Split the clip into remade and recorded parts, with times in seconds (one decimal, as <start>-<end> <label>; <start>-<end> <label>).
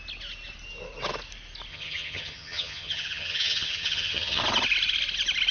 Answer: 0.0-1.7 recorded; 1.7-4.4 remade; 4.4-5.5 recorded